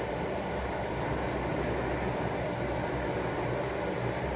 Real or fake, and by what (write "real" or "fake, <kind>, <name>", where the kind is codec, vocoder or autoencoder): real